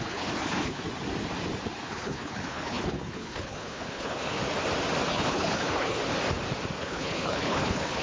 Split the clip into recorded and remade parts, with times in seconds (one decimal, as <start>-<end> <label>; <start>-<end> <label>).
0.0-0.8 remade; 0.8-1.8 recorded; 1.8-4.4 remade; 4.4-5.1 recorded; 5.1-6.0 remade; 6.0-6.8 recorded; 6.8-8.0 remade